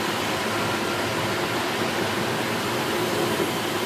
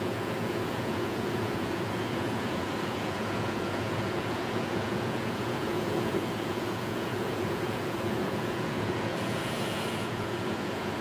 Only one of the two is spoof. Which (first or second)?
second